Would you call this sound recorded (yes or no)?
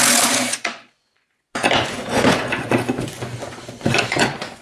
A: no